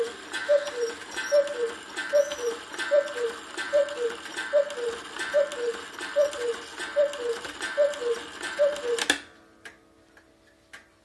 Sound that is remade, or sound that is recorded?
recorded